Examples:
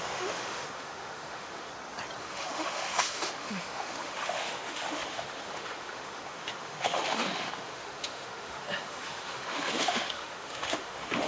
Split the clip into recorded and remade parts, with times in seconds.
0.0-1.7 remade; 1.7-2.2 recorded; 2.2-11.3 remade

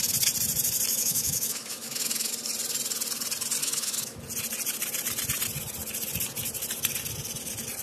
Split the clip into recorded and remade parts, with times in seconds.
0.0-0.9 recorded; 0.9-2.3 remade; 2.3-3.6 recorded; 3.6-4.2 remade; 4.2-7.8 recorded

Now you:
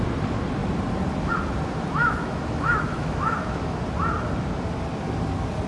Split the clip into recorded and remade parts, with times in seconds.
0.0-2.0 recorded; 2.0-3.8 remade; 3.8-5.7 recorded